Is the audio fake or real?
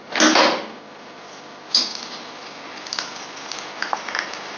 real